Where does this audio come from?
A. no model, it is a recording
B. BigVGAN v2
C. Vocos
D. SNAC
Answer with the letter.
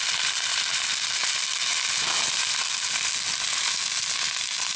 A